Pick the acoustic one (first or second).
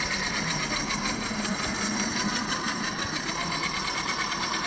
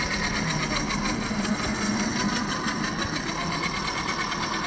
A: second